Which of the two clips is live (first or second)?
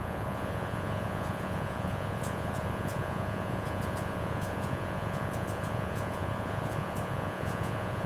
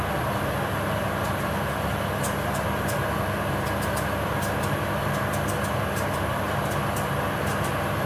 second